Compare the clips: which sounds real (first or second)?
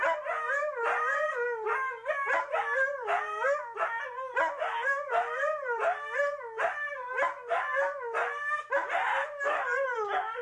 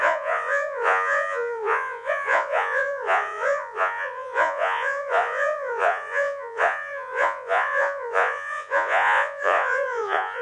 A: first